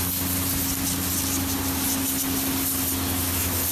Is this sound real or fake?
real